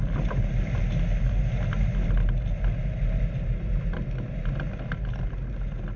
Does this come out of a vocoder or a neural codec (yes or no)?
no